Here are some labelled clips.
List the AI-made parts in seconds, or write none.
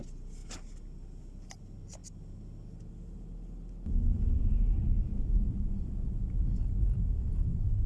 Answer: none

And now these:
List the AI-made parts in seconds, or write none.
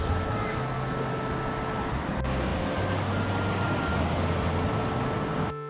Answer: 0.5-1.0 (codec, SNAC)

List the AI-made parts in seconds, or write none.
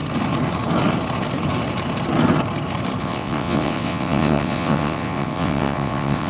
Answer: 3.0-6.3 (vocoder, WaveNeXt)